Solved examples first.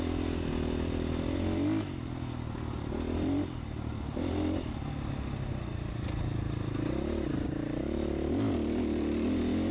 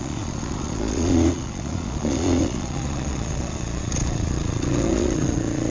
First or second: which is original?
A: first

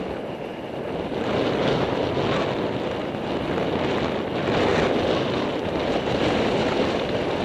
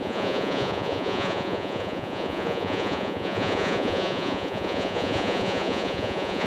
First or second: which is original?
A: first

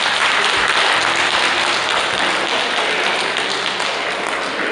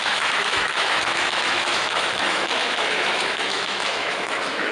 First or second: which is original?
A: first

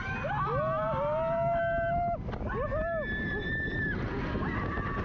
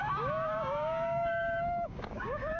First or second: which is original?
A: first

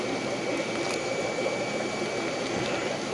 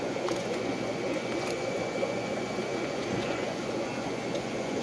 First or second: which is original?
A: first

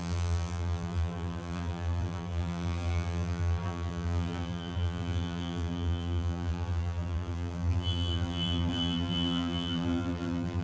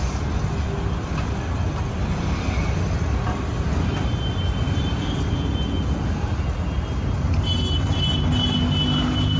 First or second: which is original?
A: second